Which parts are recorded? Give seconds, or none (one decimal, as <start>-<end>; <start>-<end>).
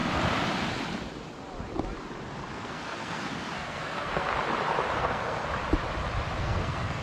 0.0-2.5; 4.3-5.0; 5.5-6.4